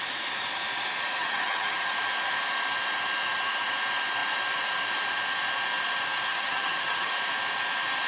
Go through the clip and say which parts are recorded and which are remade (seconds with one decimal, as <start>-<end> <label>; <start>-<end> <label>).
0.0-1.2 recorded; 1.2-1.9 remade; 1.9-6.3 recorded; 6.3-7.1 remade; 7.1-8.1 recorded